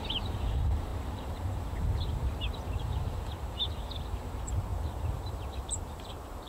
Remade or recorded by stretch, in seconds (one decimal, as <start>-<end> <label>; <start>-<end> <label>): 0.0-6.5 remade